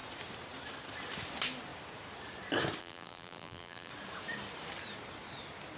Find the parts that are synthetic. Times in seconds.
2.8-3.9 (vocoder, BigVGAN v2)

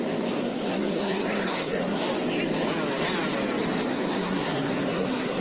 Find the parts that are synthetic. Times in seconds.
0.4-2.0 (codec, SNAC); 3.9-5.4

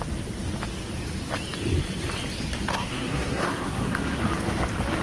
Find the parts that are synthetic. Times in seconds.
2.7-4.2 (codec, SNAC)

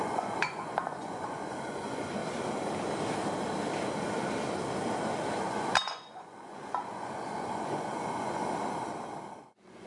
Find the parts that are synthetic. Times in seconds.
0.0-2.2 (vocoder, Vocos); 5.4-8.4; 9.4-9.9

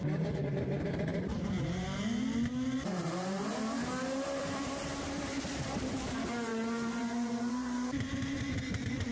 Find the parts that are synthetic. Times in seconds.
0.0-9.1 (vocoder, BigVGAN v2)